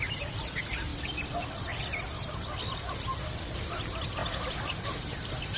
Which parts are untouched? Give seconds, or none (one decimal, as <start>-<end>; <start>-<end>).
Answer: none